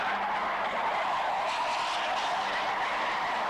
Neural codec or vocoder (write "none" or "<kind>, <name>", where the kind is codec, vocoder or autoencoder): none